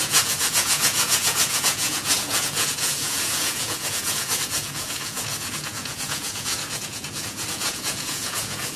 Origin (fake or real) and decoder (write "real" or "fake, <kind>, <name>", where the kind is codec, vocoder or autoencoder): fake, vocoder, Vocos